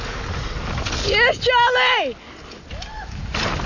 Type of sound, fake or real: real